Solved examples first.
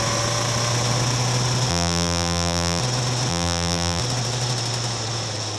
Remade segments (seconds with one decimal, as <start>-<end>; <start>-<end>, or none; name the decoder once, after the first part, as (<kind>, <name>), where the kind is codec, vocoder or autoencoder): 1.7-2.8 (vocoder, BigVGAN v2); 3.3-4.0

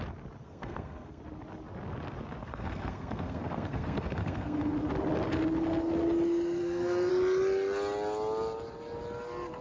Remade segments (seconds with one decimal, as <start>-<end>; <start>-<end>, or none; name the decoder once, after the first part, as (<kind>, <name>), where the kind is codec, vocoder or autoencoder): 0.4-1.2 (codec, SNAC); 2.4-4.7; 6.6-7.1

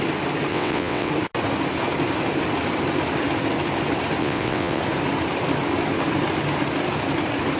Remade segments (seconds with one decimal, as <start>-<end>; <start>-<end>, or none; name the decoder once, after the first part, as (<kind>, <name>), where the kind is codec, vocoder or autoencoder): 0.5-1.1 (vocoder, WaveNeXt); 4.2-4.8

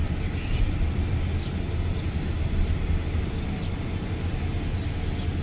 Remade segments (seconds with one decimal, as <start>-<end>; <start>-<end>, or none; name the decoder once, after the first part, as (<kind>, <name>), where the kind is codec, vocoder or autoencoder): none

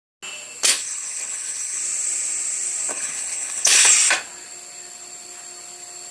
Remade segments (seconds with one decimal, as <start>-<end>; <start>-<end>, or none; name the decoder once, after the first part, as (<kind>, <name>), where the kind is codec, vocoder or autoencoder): 0.7-1.8 (codec, HILCodec); 2.9-3.9